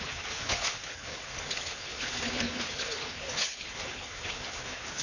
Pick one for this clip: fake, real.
fake